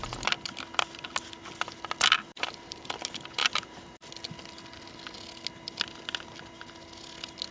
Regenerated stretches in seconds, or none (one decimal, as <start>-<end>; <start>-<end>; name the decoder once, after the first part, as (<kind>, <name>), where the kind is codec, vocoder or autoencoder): 2.3-2.9 (vocoder, BigVGAN v2); 3.4-4.1